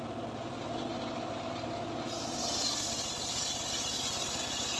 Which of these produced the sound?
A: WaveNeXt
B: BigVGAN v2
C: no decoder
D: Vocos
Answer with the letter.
C